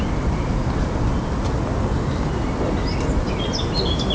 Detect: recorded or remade recorded